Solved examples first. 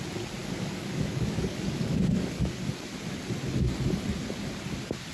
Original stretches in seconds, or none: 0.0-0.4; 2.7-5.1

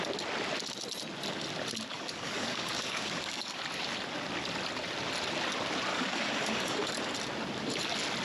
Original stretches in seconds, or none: 0.0-1.9; 3.6-5.9; 6.9-8.2

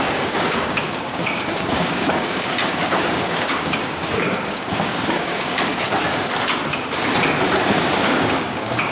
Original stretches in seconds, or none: 5.7-7.6